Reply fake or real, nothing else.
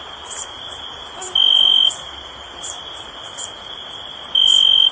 real